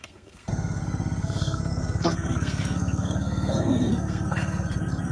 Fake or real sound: fake